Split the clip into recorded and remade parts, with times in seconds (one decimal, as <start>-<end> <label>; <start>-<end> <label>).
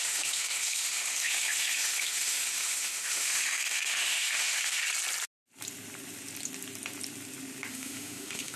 0.0-4.8 remade; 4.8-7.7 recorded; 7.7-8.6 remade